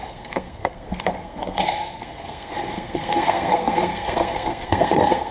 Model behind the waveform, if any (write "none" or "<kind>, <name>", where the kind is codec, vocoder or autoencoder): codec, SNAC